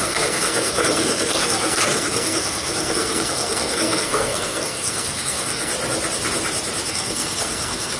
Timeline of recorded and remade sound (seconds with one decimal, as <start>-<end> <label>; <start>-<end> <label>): 0.0-5.7 remade; 5.7-6.9 recorded; 6.9-8.0 remade